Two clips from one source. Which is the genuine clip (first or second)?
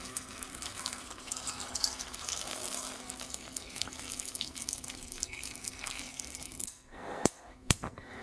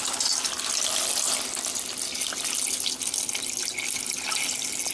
second